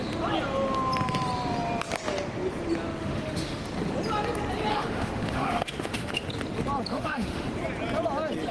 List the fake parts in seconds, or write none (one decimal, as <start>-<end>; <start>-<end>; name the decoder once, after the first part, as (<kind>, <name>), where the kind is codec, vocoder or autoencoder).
3.0-3.6 (autoencoder, DAC-VAE); 4.7-6.3; 6.9-7.5